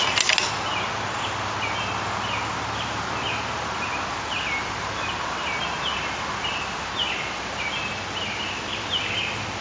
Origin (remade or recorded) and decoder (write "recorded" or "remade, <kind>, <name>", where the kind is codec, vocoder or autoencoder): recorded